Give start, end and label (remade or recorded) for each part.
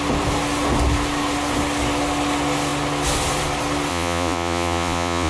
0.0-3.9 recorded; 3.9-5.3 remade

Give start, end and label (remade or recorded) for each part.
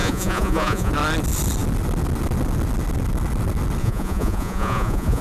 0.0-0.9 remade; 0.9-3.8 recorded; 3.8-5.2 remade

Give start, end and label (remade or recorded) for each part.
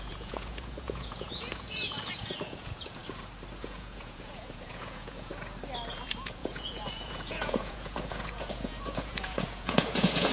0.0-3.0 remade; 3.0-3.6 recorded; 3.6-5.3 remade; 5.3-5.9 recorded; 5.9-10.3 remade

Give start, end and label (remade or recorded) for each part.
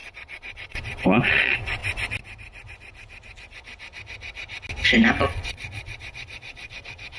0.0-1.8 remade; 1.8-5.1 recorded; 5.1-7.2 remade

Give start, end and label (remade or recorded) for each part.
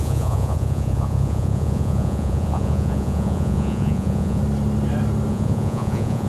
0.0-4.4 remade; 4.4-5.3 recorded; 5.3-6.3 remade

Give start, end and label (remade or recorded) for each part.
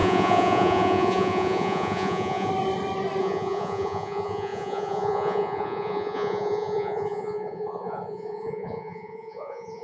0.0-2.5 remade; 2.5-3.2 recorded; 3.2-9.8 remade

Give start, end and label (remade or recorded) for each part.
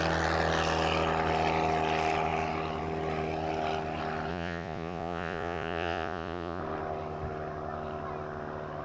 0.0-4.3 recorded; 4.3-6.6 remade; 6.6-8.8 recorded